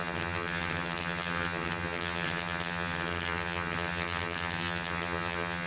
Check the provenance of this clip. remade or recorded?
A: remade